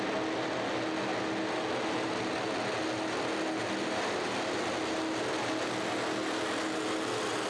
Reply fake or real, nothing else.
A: real